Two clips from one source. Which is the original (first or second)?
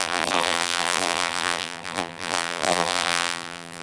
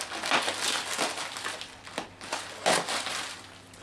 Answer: second